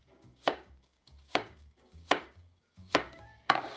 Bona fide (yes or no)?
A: no